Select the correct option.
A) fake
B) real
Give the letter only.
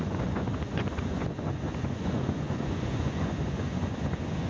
A